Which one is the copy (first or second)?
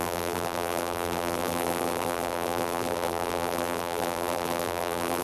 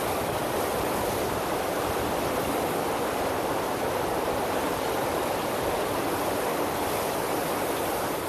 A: first